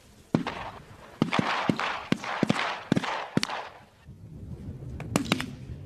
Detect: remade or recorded recorded